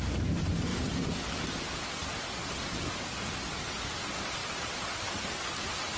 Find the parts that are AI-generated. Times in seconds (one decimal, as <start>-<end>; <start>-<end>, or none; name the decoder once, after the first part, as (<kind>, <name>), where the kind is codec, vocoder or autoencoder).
0.7-1.2 (vocoder, BigVGAN v2); 2.0-3.8